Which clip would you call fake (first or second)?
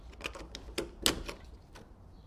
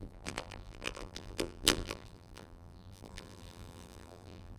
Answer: second